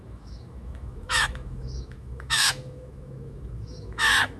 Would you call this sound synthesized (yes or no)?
yes